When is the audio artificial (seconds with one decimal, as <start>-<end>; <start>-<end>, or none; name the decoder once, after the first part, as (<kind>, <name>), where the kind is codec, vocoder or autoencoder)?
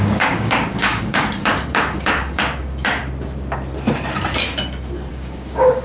0.0-3.0 (codec, DAC); 5.1-5.8